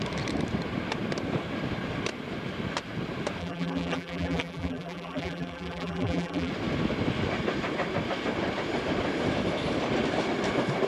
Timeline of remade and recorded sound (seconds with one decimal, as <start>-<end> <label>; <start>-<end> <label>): 0.0-3.4 recorded; 3.4-6.5 remade; 6.5-10.9 recorded